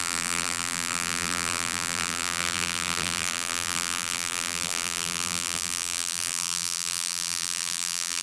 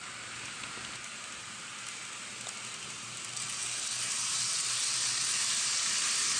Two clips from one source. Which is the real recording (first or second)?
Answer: second